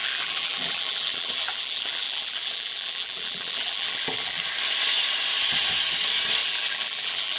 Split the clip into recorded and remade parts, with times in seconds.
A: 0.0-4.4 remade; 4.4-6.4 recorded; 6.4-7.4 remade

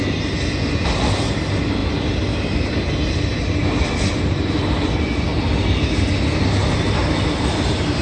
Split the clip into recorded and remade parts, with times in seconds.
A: 0.0-8.0 recorded

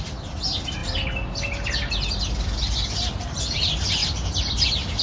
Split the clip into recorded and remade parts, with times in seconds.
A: 0.0-5.0 recorded

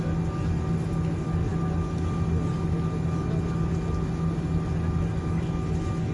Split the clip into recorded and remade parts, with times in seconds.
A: 0.0-6.1 recorded